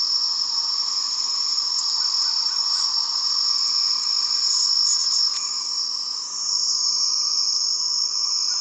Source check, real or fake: real